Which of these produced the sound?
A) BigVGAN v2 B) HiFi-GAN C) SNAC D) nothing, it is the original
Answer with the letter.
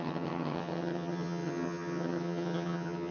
B